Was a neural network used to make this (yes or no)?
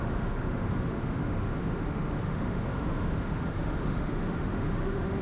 yes